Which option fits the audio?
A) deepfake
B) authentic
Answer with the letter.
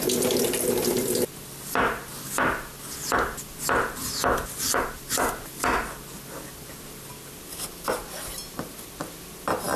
B